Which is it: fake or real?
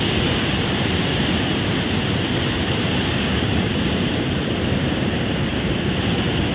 real